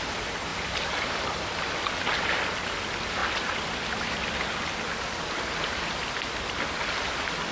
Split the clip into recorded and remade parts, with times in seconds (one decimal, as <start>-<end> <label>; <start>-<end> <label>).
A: 0.0-3.2 recorded; 3.2-6.6 remade; 6.6-7.5 recorded